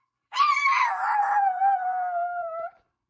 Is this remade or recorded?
remade